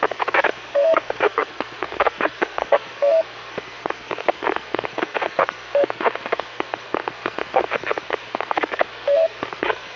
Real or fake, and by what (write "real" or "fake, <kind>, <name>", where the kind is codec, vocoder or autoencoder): fake, codec, SNAC